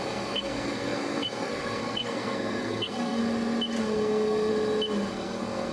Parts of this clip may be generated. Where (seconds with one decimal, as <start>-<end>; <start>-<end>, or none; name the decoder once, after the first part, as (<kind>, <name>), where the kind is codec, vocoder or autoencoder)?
0.0-3.2 (codec, SNAC); 3.8-4.5; 5.1-5.7